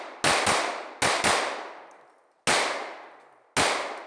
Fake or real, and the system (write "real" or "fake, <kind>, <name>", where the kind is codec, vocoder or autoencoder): real